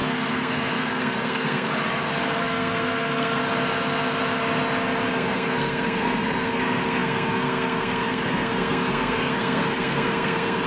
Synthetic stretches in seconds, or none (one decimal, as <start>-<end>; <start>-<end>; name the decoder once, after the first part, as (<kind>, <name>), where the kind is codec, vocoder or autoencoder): 0.0-1.7 (codec, SNAC); 2.4-3.4; 5.1-10.7